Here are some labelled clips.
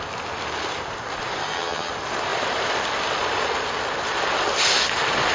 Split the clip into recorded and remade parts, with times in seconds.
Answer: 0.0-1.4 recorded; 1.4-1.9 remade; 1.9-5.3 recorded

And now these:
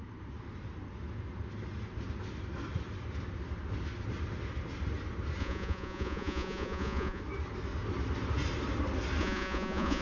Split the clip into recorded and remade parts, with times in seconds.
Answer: 0.0-5.4 recorded; 5.4-7.2 remade; 7.2-9.2 recorded; 9.2-10.0 remade

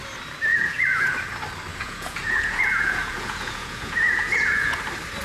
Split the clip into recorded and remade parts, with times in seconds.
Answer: 0.0-0.5 recorded; 0.5-1.1 remade; 1.1-1.7 recorded; 1.7-4.8 remade; 4.8-5.2 recorded

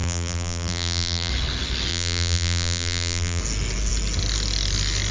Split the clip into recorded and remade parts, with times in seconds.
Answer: 0.0-1.3 remade; 1.3-1.9 recorded; 1.9-3.4 remade; 3.4-5.1 recorded

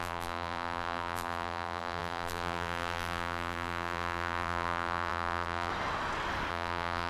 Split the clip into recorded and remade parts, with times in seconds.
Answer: 0.0-5.7 remade; 5.7-6.5 recorded; 6.5-7.1 remade